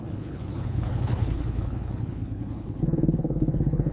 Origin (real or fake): fake